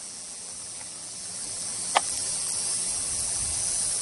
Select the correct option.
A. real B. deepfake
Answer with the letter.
B